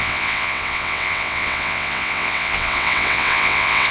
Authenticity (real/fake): fake